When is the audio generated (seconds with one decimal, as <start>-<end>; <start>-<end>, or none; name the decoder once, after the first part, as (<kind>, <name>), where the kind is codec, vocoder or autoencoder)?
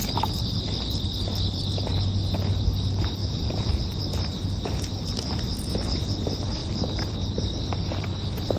3.2-3.8 (vocoder, BigVGAN v2)